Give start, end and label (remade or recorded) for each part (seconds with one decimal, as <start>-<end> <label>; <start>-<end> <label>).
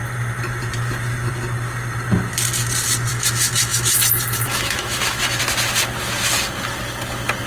0.0-3.1 recorded; 3.1-5.4 remade; 5.4-7.5 recorded